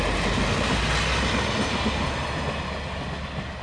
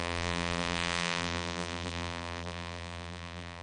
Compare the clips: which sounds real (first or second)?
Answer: first